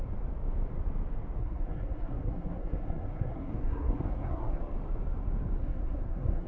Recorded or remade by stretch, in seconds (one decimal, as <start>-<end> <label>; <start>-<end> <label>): 0.0-1.4 recorded; 1.4-4.6 remade; 4.6-5.6 recorded; 5.6-6.5 remade